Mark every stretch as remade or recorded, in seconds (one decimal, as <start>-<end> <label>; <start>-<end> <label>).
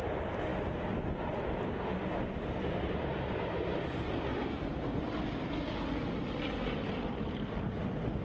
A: 0.0-8.2 recorded